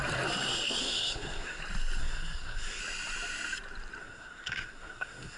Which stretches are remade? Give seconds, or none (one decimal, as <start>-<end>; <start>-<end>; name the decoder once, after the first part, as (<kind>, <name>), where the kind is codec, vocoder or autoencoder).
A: 0.8-1.6 (codec, SNAC); 2.0-2.8; 4.0-5.4